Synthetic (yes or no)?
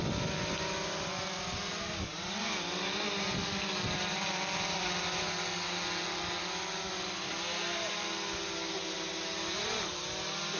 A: no